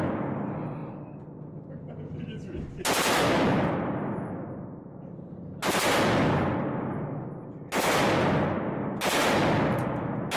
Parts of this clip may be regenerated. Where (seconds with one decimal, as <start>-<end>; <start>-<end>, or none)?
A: none